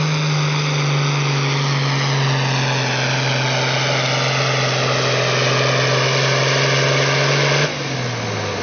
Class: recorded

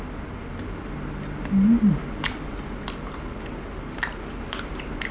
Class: recorded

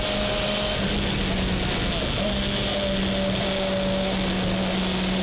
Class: recorded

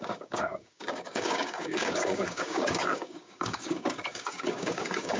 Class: remade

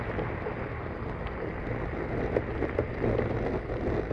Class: recorded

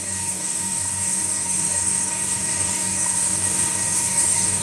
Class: remade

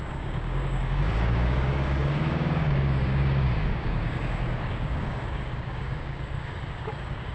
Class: remade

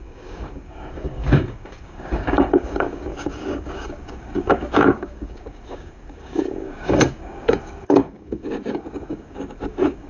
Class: remade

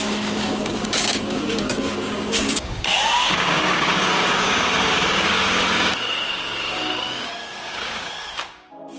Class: remade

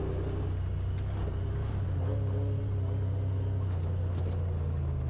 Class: recorded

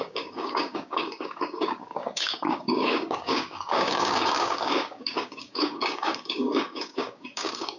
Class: remade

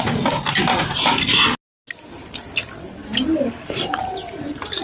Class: recorded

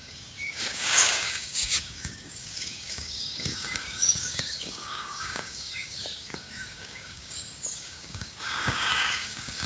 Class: remade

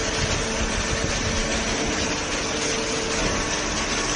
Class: recorded